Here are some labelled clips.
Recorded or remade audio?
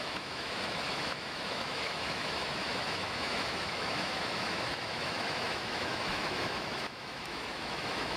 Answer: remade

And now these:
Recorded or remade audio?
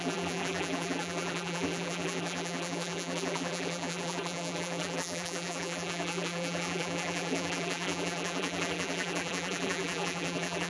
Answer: remade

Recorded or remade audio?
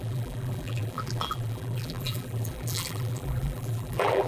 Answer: remade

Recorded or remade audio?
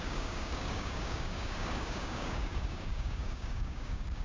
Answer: remade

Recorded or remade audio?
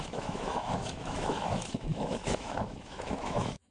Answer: remade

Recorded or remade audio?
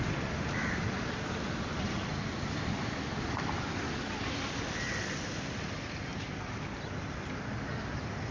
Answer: recorded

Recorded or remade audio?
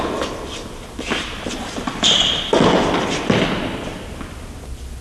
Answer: recorded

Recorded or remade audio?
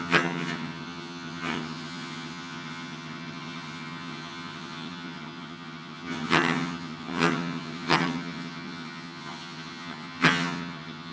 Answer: remade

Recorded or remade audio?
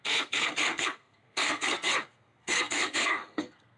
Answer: remade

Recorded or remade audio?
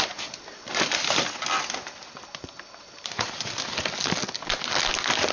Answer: recorded